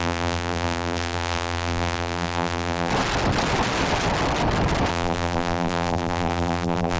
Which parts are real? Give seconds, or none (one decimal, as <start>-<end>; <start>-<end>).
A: 2.9-4.9